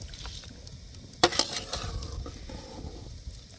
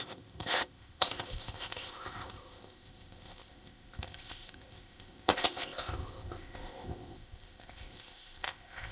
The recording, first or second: first